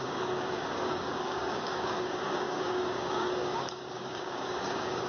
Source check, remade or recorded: remade